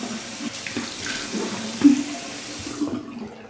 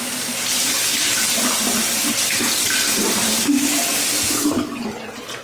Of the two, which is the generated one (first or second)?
first